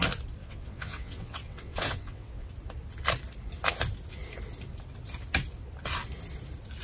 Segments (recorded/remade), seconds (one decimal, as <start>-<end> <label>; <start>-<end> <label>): 0.0-0.4 recorded; 0.4-2.5 remade; 2.5-6.8 recorded